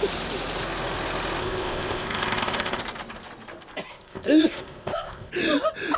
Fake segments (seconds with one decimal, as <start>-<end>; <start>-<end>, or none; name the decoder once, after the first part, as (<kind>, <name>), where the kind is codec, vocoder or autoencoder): 1.4-2.8 (codec, ZipCodec); 3.9-5.3